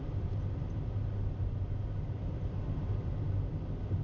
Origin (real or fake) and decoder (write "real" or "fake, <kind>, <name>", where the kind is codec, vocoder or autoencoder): real